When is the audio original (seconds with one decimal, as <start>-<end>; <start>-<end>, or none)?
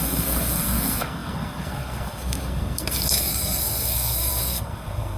none